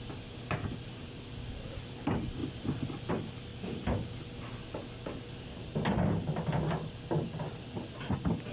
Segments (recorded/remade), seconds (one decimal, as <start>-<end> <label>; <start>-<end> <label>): 0.0-8.5 recorded